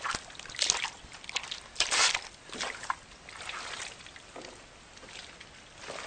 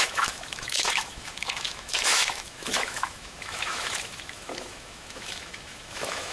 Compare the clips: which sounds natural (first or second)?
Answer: first